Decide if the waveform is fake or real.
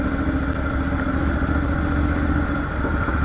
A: real